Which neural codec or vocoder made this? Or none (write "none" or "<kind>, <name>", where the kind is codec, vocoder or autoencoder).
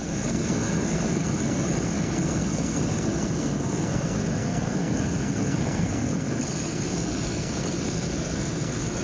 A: codec, SNAC